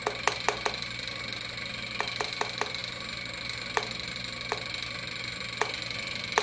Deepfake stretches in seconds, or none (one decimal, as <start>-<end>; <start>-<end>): none

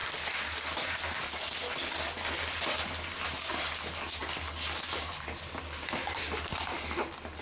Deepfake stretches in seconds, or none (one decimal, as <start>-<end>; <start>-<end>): none

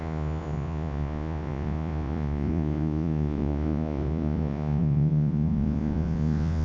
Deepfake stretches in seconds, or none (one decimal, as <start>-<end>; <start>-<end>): 0.0-6.6

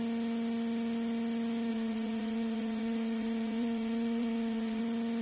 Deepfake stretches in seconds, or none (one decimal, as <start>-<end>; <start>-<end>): 1.7-4.8

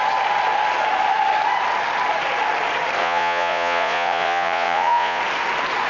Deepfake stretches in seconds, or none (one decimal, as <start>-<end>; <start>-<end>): 3.0-5.2